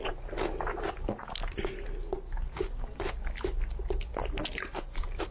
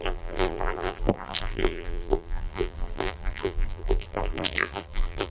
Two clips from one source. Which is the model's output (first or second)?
second